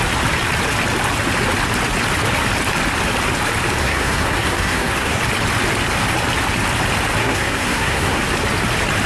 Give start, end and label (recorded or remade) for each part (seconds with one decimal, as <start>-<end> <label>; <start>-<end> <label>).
0.0-3.8 recorded; 3.8-5.2 remade; 5.2-7.2 recorded; 7.2-8.2 remade; 8.2-9.1 recorded